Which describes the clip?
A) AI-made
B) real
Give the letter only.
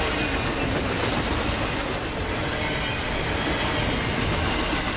B